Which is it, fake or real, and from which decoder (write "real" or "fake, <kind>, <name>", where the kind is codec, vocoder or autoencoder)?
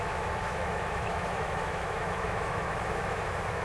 fake, autoencoder, DAC-VAE